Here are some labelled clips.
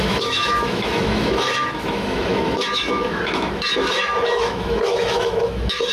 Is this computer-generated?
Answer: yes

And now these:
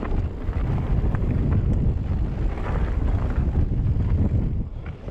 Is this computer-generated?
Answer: no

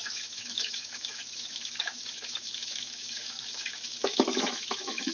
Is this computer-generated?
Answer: yes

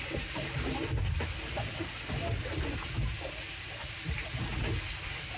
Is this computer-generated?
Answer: no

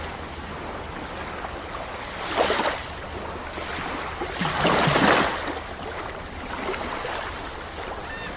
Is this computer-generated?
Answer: no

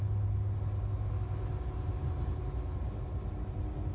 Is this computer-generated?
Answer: no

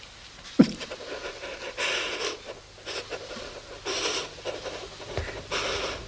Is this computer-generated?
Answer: no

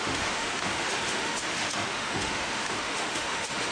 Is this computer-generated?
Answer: yes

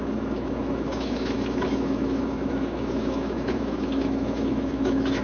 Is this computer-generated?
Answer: yes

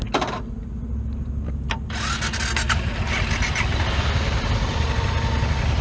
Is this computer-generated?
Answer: no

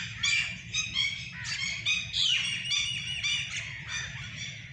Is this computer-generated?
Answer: no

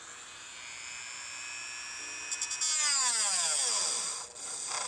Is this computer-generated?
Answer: no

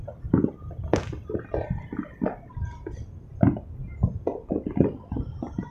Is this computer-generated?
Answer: no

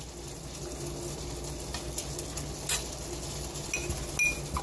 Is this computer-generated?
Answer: no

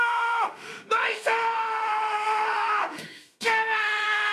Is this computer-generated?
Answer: yes